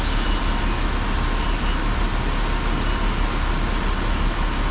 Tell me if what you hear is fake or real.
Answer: real